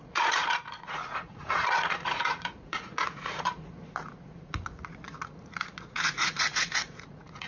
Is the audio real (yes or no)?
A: no